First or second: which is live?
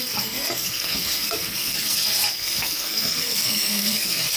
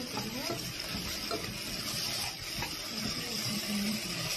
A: second